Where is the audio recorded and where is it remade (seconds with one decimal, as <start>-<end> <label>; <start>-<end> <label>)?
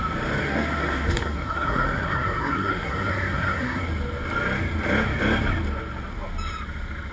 0.0-0.4 recorded; 0.4-3.9 remade; 3.9-7.1 recorded